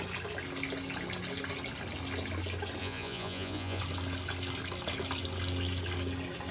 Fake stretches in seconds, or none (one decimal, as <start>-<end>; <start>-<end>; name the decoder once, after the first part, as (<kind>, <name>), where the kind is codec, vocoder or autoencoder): 2.8-3.8 (vocoder, Vocos)

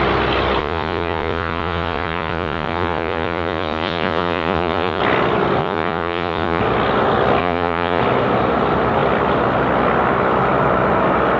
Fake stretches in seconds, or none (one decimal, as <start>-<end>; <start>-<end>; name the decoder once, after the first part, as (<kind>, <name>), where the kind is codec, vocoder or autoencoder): 0.6-5.0 (vocoder, Vocos); 5.6-6.6; 7.4-8.0

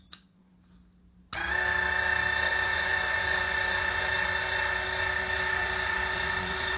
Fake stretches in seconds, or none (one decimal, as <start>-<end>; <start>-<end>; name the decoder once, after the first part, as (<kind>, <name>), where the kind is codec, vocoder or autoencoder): 0.0-0.5 (vocoder, Vocos); 2.5-6.8

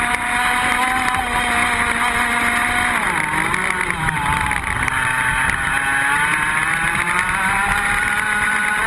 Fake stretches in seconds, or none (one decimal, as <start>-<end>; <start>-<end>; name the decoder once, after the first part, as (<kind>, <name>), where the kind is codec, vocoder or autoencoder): none

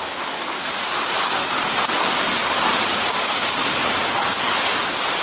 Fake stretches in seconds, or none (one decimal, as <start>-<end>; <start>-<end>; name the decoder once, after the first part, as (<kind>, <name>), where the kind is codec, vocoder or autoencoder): none